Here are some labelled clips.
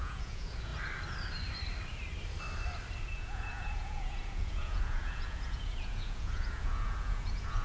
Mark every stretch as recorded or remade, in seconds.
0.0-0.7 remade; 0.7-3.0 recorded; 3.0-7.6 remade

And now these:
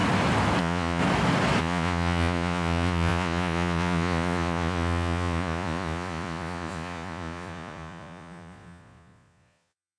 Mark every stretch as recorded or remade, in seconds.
0.0-0.6 recorded; 0.6-1.0 remade; 1.0-1.6 recorded; 1.6-10.0 remade

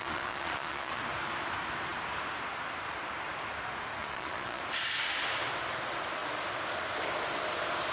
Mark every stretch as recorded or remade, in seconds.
0.0-1.0 remade; 1.0-4.0 recorded; 4.0-4.6 remade; 4.6-7.9 recorded

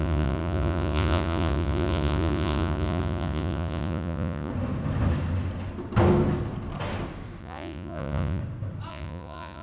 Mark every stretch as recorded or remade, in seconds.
0.0-4.5 remade; 4.5-7.4 recorded; 7.4-8.4 remade; 8.4-8.9 recorded; 8.9-9.6 remade

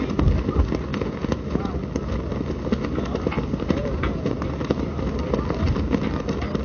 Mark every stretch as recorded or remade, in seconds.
0.0-0.9 recorded; 0.9-1.7 remade; 1.7-3.8 recorded; 3.8-4.4 remade; 4.4-6.6 recorded

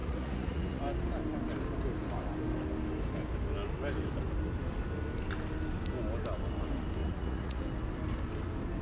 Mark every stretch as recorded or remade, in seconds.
0.0-0.8 remade; 0.8-7.0 recorded; 7.0-7.6 remade; 7.6-8.8 recorded

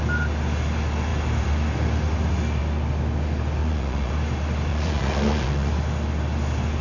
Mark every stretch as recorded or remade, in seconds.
0.0-3.6 recorded; 3.6-4.1 remade; 4.1-4.7 recorded; 4.7-5.7 remade; 5.7-6.8 recorded

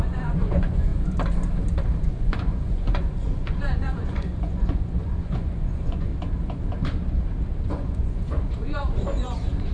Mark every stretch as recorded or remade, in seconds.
0.0-0.9 remade; 0.9-2.0 recorded; 2.0-6.1 remade; 6.1-7.7 recorded; 7.7-9.7 remade